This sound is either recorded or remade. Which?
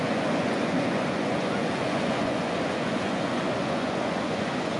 remade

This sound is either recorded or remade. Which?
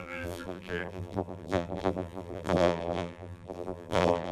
remade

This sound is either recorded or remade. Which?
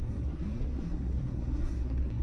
remade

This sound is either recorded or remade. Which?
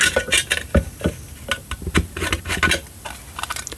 recorded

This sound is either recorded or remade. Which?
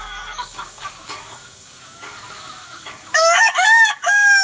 remade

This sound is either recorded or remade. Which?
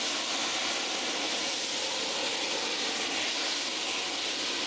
recorded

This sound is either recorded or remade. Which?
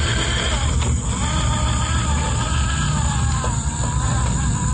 recorded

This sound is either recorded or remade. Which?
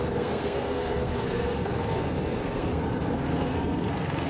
remade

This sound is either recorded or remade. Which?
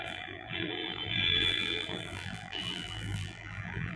remade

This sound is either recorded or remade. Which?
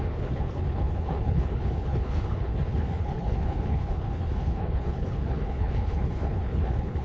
remade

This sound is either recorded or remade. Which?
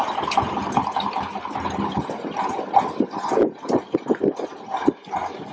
recorded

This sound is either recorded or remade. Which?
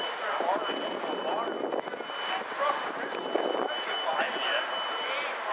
recorded